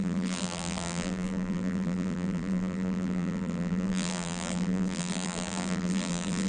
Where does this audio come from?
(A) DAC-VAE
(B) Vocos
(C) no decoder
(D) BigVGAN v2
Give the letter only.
D